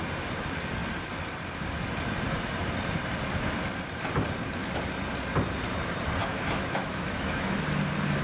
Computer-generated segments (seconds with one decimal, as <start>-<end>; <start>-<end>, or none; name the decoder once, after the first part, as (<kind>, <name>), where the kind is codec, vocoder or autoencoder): 6.2-7.5 (autoencoder, DAC-VAE)